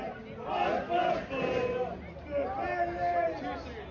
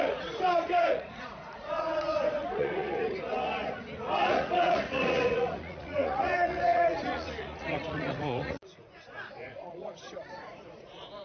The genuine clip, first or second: first